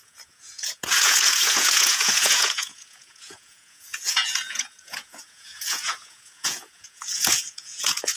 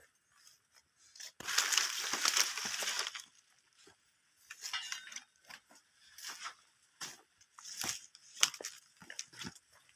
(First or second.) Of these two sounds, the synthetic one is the first